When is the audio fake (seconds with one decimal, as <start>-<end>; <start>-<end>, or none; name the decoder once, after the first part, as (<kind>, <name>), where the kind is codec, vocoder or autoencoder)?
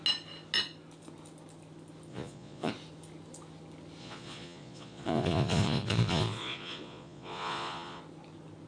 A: 2.1-2.7 (vocoder, Vocos); 4.0-8.0